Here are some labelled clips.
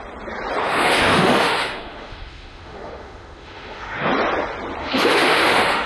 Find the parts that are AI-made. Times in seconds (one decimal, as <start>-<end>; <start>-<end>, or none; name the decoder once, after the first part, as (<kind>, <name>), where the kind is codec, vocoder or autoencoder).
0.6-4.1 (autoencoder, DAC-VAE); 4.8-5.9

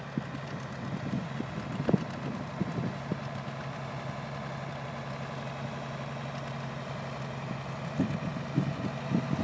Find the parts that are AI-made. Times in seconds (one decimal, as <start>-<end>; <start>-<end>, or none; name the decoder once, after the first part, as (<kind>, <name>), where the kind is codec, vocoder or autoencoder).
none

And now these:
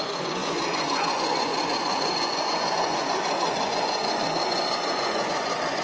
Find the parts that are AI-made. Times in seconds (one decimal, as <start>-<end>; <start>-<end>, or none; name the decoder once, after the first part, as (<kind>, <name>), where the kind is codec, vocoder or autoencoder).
0.0-5.8 (vocoder, Vocos)

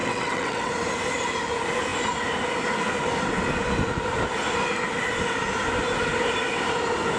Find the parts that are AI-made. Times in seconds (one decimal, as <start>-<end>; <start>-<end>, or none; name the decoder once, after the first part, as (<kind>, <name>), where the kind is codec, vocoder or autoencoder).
0.0-0.7 (vocoder, WaveNeXt)